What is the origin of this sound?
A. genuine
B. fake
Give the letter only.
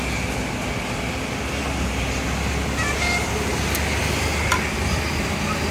A